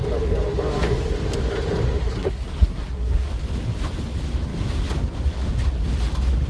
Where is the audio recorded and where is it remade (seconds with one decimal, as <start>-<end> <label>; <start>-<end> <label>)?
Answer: 0.0-2.0 recorded; 2.0-3.3 remade; 3.3-6.5 recorded